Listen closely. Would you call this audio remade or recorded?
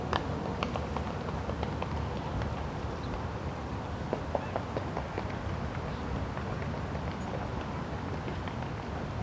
recorded